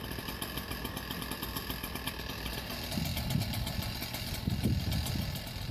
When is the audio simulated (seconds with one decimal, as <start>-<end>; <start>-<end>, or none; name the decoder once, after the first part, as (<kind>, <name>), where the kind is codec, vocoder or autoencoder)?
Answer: none